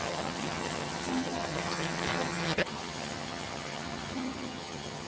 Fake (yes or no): yes